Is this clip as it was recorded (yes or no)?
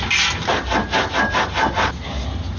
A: yes